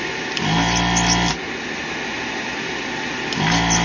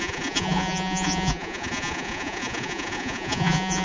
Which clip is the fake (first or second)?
second